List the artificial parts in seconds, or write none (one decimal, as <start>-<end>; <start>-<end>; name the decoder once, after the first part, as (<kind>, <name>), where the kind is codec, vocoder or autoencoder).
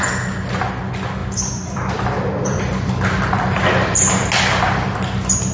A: 1.2-4.1 (vocoder, BigVGAN v2)